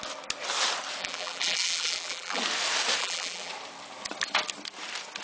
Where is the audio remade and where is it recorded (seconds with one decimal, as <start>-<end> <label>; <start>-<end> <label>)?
0.0-1.0 recorded; 1.0-2.4 remade; 2.4-3.0 recorded; 3.0-3.5 remade; 3.5-5.2 recorded